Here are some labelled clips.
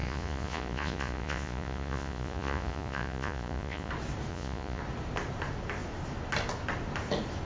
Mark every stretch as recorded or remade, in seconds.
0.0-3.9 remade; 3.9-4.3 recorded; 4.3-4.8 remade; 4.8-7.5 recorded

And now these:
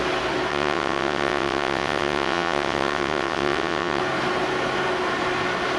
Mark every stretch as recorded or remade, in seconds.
0.0-0.5 recorded; 0.5-4.0 remade; 4.0-5.8 recorded

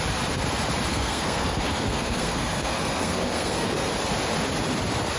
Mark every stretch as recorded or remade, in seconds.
0.0-0.9 recorded; 0.9-3.9 remade; 3.9-5.2 recorded